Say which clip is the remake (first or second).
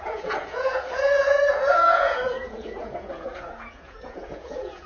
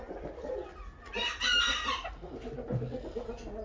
first